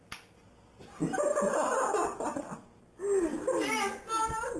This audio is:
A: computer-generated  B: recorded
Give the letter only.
B